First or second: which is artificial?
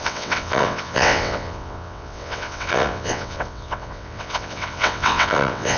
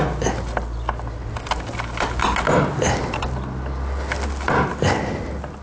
first